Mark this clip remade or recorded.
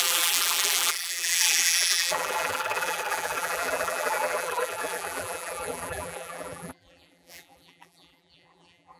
remade